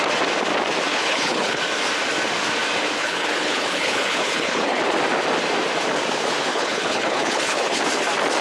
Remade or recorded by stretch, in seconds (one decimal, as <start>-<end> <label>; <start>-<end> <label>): 0.0-0.9 recorded; 0.9-1.6 remade; 1.6-3.0 recorded; 3.0-4.8 remade; 4.8-6.5 recorded; 6.5-7.8 remade; 7.8-8.4 recorded